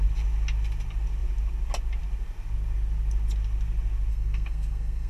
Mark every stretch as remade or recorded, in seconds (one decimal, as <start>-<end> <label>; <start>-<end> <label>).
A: 0.0-4.1 recorded; 4.1-5.1 remade

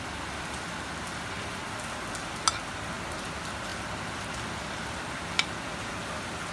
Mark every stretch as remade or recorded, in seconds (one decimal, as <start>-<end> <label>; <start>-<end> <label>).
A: 0.0-6.5 recorded